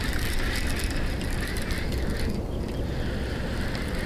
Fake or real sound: real